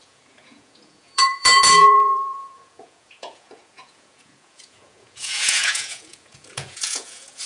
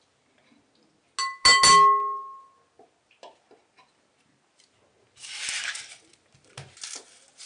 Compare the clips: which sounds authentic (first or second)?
second